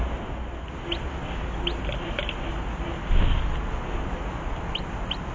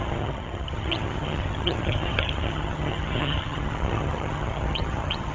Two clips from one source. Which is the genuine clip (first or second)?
first